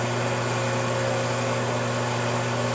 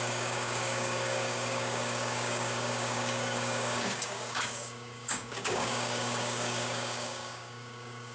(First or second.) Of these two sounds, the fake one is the second